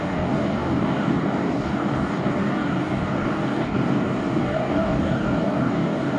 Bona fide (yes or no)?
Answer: no